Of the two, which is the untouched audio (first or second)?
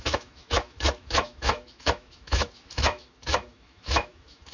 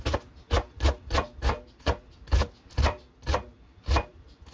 second